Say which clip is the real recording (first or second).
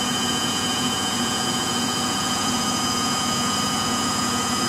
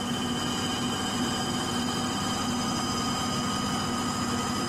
second